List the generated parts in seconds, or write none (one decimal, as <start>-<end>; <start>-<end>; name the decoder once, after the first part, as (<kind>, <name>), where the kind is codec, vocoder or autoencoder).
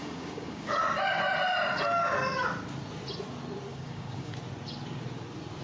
0.0-0.7 (codec, DAC); 3.7-4.3